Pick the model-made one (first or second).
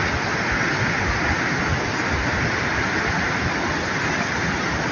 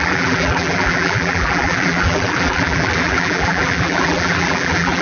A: second